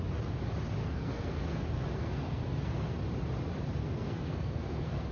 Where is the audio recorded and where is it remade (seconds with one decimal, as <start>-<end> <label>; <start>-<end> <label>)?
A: 0.0-0.8 recorded; 0.8-3.0 remade; 3.0-3.8 recorded; 3.8-5.1 remade